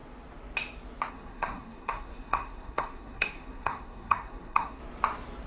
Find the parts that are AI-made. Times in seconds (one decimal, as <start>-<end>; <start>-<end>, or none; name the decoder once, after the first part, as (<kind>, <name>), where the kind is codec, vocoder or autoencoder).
1.1-4.8 (codec, SNAC)